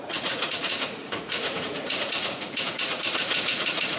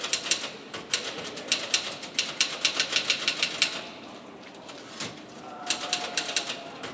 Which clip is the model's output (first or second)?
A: first